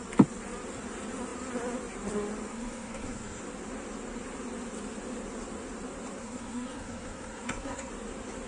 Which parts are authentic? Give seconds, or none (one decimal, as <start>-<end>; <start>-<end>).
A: 0.0-2.5; 3.4-6.2; 7.9-8.5